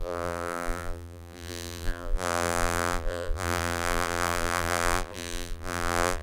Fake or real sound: fake